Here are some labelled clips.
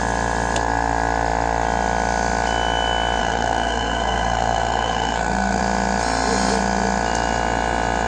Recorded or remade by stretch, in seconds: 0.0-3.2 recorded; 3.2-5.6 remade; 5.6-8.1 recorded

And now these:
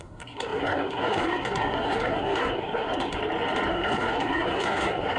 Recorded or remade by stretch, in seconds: 0.0-3.2 remade; 3.2-3.7 recorded; 3.7-5.2 remade

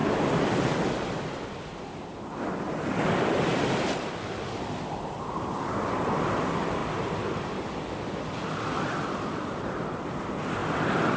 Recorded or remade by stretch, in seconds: 0.0-11.2 recorded

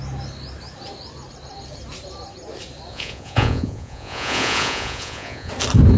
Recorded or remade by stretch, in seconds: 0.0-2.9 recorded; 2.9-5.5 remade; 5.5-6.0 recorded